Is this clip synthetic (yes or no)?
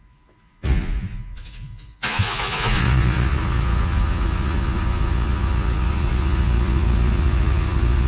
yes